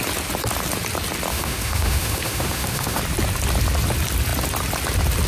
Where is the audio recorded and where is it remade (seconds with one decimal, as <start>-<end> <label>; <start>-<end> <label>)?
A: 0.0-1.3 recorded; 1.3-3.0 remade; 3.0-5.3 recorded